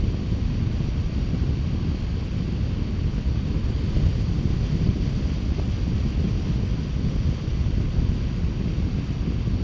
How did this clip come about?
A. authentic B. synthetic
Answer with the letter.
A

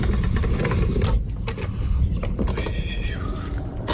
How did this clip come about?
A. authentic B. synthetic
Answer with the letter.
A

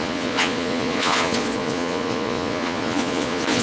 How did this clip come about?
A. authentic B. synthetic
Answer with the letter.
B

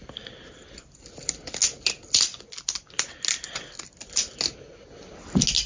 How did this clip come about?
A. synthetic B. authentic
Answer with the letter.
B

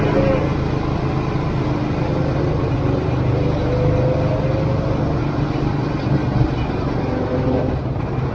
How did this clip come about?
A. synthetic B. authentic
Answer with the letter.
B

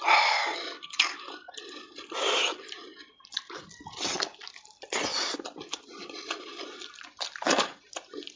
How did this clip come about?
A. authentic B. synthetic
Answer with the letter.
A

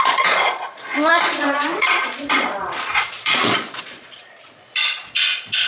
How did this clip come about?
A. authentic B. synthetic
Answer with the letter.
B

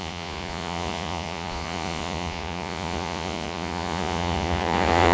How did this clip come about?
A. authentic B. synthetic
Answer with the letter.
B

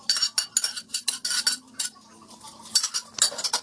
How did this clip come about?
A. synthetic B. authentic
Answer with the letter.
B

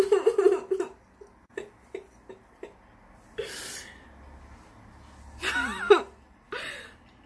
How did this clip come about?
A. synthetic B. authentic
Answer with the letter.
B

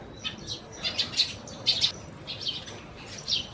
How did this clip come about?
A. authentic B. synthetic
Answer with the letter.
A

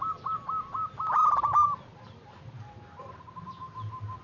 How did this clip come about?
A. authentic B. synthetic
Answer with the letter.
A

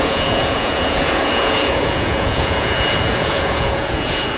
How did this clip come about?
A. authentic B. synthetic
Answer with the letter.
B